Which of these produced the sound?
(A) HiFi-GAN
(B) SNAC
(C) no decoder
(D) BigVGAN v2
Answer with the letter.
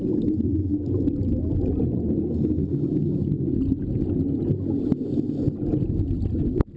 C